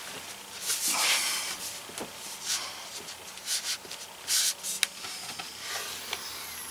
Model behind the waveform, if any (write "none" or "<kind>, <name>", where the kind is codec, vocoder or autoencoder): none